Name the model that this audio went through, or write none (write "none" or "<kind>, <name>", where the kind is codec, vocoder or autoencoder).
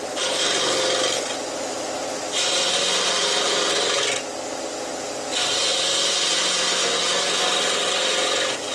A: none